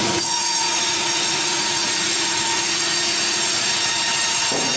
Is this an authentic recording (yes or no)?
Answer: no